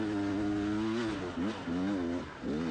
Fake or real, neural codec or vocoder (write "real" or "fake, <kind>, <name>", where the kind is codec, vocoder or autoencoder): real